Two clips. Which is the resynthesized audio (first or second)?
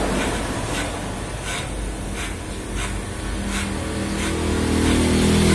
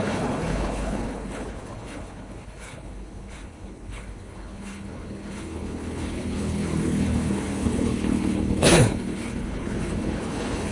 second